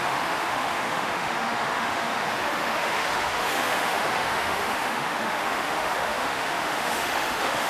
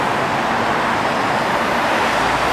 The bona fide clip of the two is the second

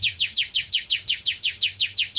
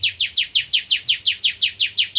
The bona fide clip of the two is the second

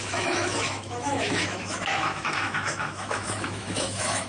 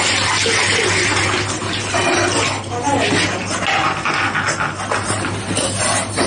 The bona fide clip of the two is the second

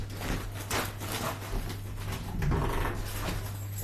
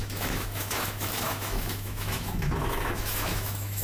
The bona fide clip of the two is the first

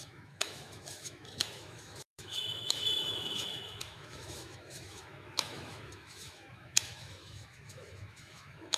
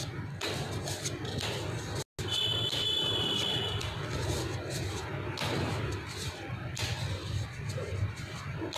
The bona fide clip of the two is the second